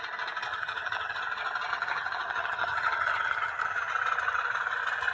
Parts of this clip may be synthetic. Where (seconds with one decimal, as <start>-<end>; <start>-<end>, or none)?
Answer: 0.5-1.2; 1.7-3.9